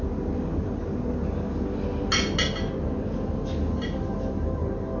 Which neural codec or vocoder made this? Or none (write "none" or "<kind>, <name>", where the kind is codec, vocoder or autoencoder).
none